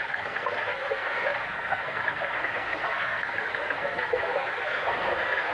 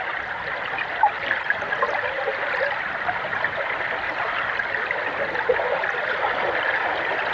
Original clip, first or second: second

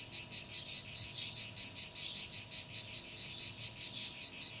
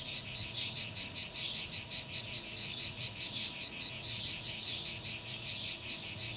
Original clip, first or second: first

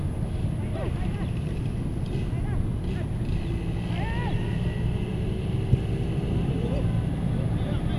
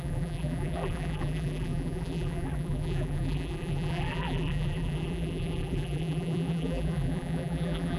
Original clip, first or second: first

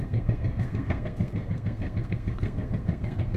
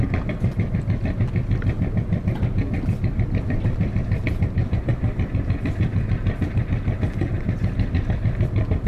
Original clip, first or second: second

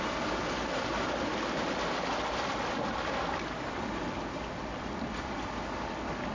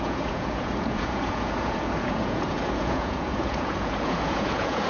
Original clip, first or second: first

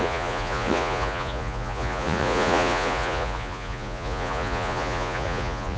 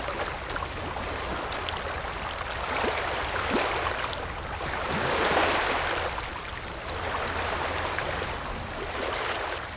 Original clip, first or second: second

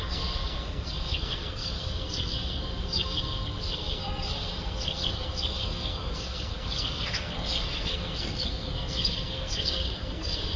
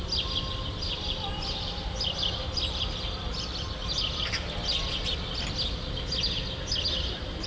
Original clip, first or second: second